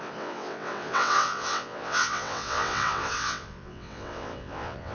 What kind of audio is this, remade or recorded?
remade